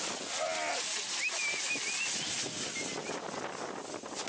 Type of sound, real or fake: real